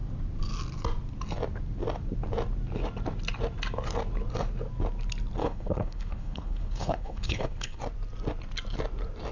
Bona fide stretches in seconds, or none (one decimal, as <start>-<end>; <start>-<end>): 0.0-5.4; 7.8-9.3